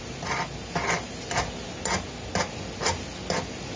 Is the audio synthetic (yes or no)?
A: no